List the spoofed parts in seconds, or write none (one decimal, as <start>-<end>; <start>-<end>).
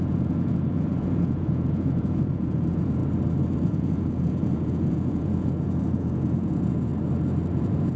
0.0-3.0; 3.7-6.9; 7.5-8.0